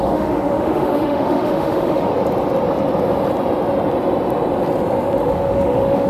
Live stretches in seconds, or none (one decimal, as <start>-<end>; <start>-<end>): 2.1-5.2